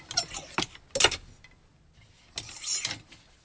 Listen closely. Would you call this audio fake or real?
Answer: real